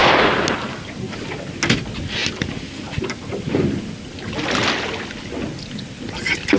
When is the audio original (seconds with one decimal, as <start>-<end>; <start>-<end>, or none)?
0.0-6.6